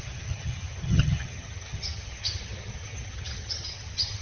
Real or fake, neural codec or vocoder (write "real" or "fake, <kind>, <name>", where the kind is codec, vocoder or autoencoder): fake, vocoder, HiFi-GAN